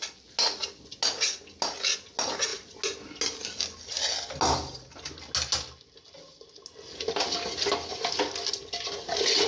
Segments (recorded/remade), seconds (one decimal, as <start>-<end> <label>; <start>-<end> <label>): 0.0-9.5 recorded